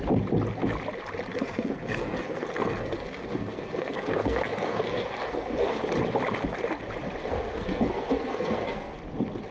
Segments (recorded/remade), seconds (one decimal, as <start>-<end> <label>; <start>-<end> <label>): 0.0-1.3 recorded; 1.3-5.8 remade; 5.8-7.2 recorded; 7.2-9.0 remade; 9.0-9.5 recorded